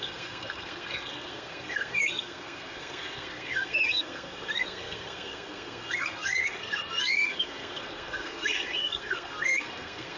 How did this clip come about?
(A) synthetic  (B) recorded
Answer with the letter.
A